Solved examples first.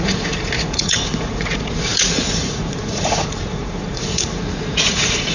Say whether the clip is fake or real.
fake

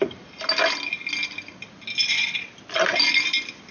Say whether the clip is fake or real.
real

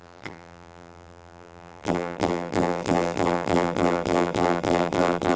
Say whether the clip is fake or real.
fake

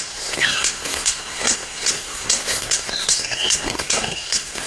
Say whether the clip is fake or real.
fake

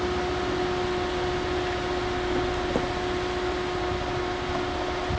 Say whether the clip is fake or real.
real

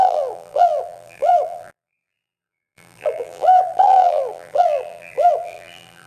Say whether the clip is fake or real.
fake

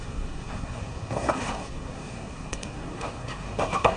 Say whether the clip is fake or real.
fake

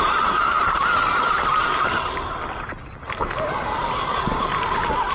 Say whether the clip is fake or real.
real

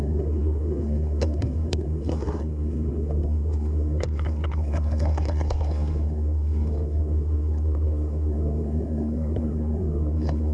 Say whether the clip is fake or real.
fake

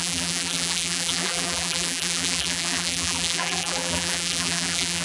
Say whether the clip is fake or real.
fake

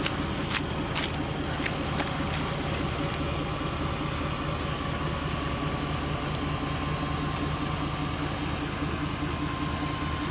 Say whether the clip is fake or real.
real